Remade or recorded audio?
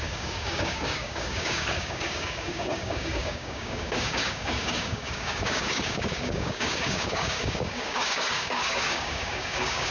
remade